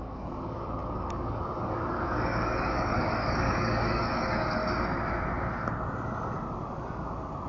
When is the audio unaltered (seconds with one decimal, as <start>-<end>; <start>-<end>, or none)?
4.6-7.5